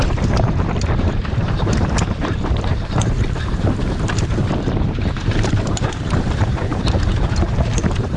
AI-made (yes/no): yes